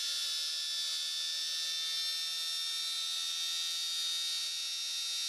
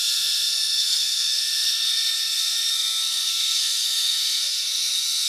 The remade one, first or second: second